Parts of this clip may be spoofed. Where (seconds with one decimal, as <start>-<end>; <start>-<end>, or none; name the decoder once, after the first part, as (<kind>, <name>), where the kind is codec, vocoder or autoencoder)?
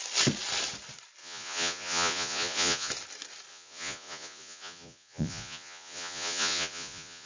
1.2-2.9 (vocoder, Vocos); 3.5-7.3